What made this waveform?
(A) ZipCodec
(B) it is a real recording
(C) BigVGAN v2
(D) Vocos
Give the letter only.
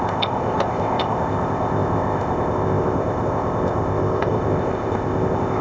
A